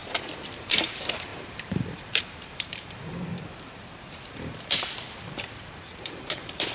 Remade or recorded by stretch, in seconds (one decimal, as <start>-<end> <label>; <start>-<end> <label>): 0.0-0.5 recorded; 0.5-3.3 remade; 3.3-6.0 recorded; 6.0-6.7 remade